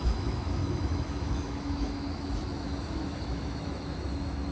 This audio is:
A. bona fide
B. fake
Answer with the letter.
B